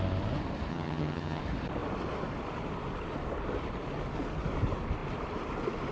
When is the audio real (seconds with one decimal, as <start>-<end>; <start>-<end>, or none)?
0.0-0.7; 1.4-5.9